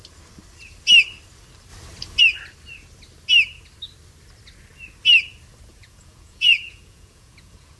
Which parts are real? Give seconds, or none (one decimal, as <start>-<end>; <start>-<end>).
0.0-5.7

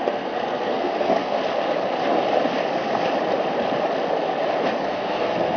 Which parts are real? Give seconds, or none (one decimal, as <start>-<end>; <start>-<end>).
1.4-4.8

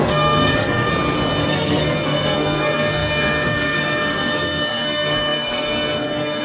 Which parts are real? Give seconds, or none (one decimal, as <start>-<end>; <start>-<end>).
0.9-1.4

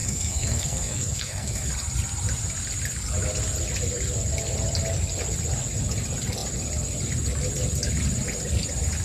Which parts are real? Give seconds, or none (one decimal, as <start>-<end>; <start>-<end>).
1.7-9.0

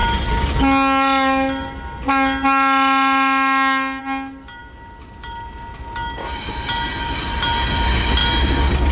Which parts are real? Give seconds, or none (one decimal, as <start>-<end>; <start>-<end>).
0.0-8.9

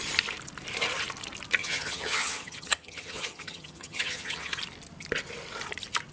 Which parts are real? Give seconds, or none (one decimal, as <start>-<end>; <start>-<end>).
0.0-1.6; 4.6-6.1

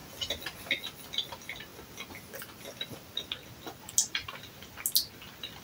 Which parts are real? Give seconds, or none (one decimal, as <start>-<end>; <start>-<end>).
0.0-5.6